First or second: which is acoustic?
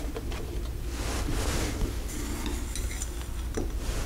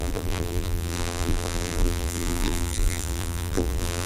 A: first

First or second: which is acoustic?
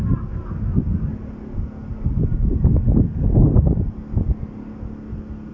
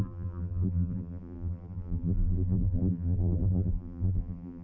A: first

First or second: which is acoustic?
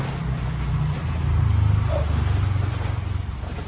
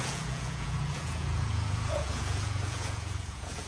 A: first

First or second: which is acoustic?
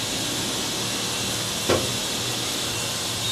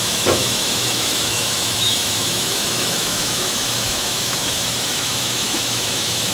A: first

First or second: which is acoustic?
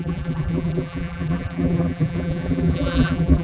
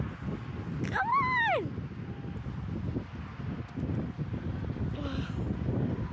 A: second